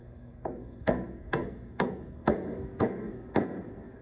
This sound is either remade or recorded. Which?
remade